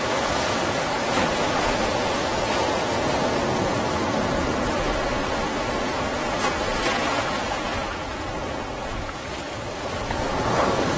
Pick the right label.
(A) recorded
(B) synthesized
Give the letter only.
B